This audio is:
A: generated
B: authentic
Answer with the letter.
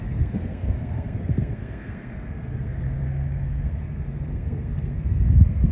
A